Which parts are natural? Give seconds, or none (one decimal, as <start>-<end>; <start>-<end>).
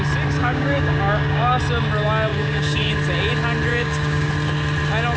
0.0-0.4; 1.6-2.3; 2.9-3.7; 4.3-5.2